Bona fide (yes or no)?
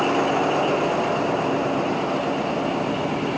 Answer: yes